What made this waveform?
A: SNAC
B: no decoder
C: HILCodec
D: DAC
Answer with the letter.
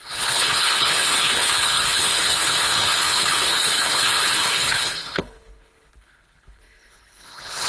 C